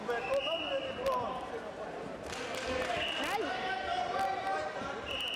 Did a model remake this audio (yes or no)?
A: no